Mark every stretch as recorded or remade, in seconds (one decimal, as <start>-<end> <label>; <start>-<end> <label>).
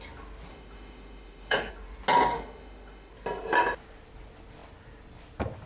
0.0-0.5 recorded; 0.5-1.7 remade; 1.7-2.3 recorded; 2.3-3.1 remade; 3.1-5.7 recorded